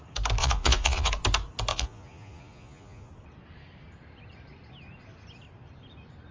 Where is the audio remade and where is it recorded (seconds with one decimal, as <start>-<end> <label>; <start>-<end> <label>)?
0.0-0.4 recorded; 0.4-1.1 remade; 1.1-1.7 recorded; 1.7-3.1 remade; 3.1-6.3 recorded